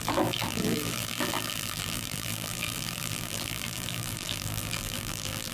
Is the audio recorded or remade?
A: remade